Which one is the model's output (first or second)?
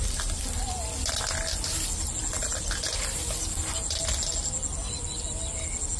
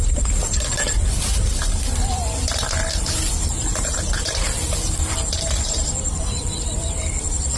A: second